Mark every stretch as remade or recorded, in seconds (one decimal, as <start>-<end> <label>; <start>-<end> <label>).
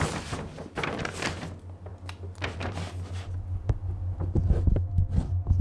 0.0-5.6 recorded